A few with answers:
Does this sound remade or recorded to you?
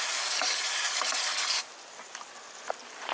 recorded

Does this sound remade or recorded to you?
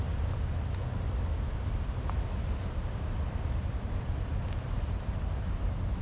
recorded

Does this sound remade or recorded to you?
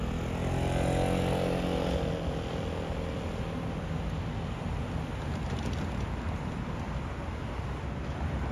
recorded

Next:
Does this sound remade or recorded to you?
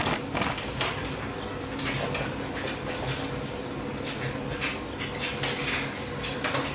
recorded